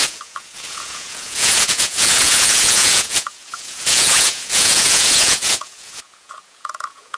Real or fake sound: fake